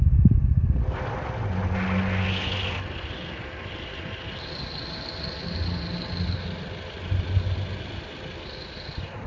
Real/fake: real